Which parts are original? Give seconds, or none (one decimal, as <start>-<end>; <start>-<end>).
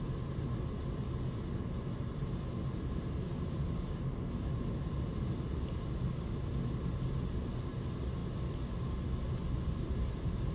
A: 0.0-10.5